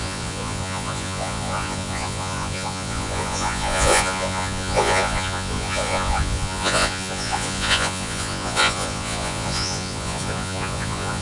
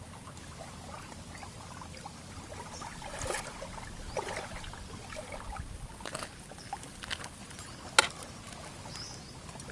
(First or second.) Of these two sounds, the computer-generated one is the first